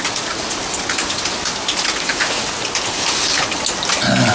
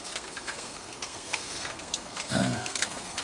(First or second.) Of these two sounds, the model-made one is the second